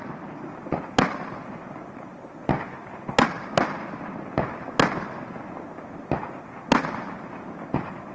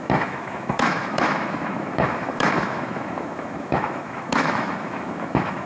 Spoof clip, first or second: second